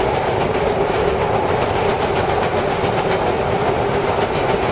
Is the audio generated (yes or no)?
no